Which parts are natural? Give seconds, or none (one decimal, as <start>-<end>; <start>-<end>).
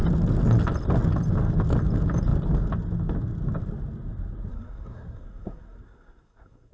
0.0-4.5